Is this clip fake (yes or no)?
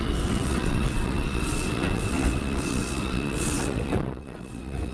yes